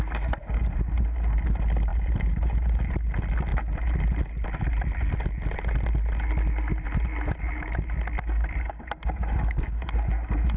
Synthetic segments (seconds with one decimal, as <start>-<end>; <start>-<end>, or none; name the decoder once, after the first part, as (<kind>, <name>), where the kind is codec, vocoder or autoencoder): 1.9-3.1 (vocoder, BigVGAN v2)